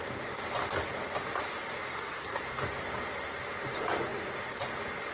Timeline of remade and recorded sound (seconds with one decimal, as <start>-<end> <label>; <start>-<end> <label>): 0.0-1.9 recorded; 1.9-2.4 remade; 2.4-5.1 recorded